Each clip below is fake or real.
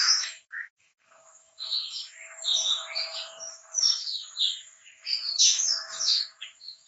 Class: fake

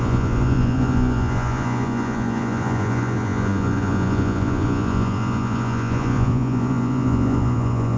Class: fake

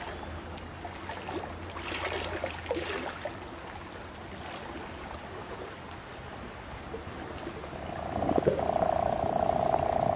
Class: real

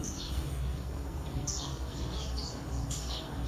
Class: fake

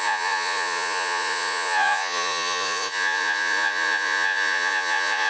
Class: fake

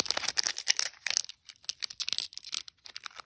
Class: real